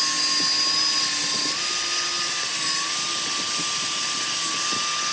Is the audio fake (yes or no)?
no